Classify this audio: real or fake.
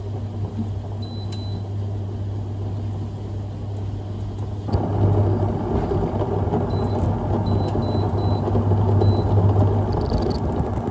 real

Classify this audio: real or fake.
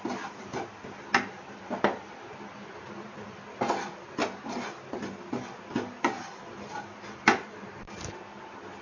real